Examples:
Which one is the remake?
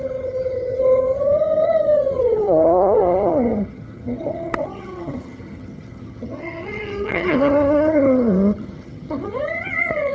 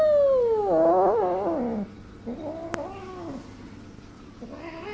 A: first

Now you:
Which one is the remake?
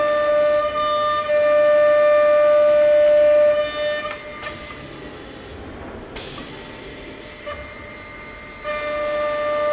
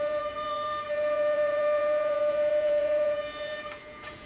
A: second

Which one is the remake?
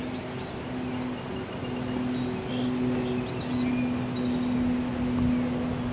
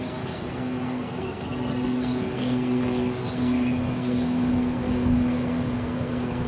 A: second